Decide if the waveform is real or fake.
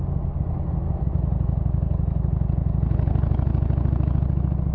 real